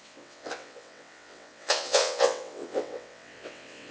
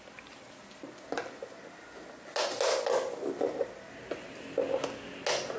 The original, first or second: second